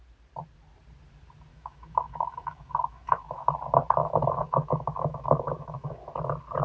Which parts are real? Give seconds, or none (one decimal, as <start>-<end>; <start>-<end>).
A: 0.0-1.5; 3.5-4.0; 6.0-6.6

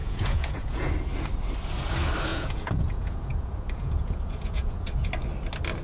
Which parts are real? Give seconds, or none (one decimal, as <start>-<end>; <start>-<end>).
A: 0.9-2.3; 5.1-5.8

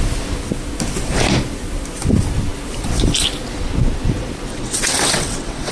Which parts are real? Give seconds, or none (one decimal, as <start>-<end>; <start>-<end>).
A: 0.0-4.5

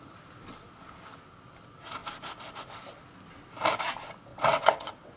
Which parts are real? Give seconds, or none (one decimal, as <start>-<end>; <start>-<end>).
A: 0.0-4.3

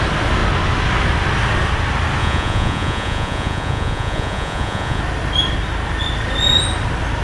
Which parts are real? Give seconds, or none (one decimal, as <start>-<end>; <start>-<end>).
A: 0.0-2.2; 5.0-7.2